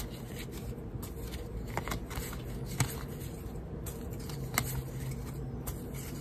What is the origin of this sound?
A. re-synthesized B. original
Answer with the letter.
B